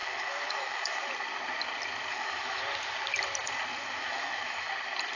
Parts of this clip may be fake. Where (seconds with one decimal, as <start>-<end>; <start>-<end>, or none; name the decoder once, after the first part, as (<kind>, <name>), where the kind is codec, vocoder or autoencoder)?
0.0-1.1 (autoencoder, DAC-VAE); 2.1-2.6; 3.7-4.7